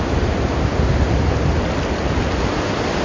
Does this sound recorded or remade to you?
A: recorded